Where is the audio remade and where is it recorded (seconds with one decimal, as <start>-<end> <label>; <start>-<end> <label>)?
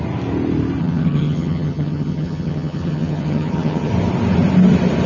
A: 0.0-0.8 recorded; 0.8-3.9 remade; 3.9-5.1 recorded